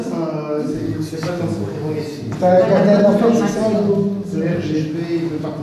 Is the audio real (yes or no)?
yes